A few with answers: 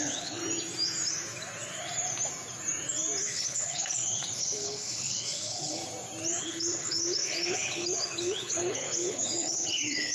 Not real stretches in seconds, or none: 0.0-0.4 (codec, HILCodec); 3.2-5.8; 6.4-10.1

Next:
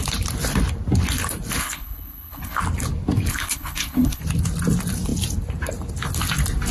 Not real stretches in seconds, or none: 1.6-2.6 (codec, HILCodec); 3.3-4.2

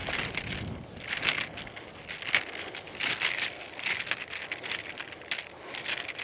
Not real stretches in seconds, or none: none